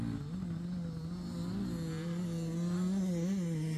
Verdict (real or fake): real